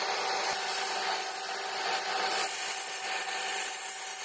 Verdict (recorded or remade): recorded